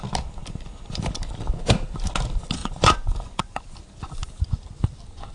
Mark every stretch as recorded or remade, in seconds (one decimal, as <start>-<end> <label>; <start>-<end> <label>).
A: 0.0-2.6 recorded; 2.6-3.6 remade; 3.6-5.3 recorded